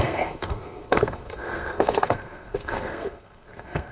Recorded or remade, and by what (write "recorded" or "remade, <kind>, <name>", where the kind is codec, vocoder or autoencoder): remade, codec, SNAC